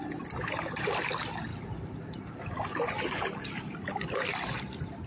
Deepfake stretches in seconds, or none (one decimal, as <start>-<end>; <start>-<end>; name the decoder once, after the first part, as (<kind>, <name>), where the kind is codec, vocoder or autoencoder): 0.0-1.5 (vocoder, BigVGAN v2); 4.6-5.1